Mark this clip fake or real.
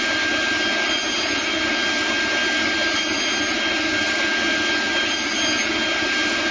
real